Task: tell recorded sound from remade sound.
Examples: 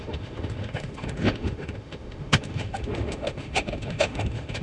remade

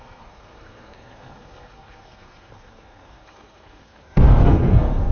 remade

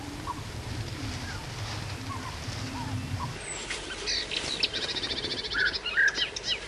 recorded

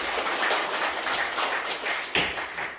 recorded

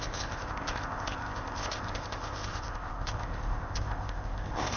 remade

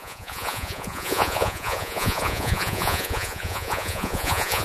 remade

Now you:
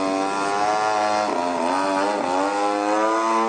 recorded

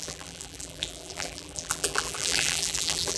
remade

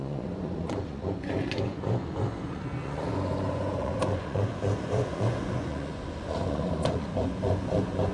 remade